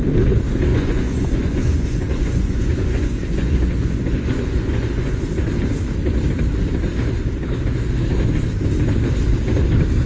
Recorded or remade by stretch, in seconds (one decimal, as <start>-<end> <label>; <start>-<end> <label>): 0.0-0.7 recorded; 0.7-5.2 remade; 5.2-10.1 recorded